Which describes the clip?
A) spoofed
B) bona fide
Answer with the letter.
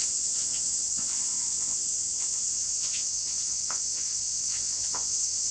A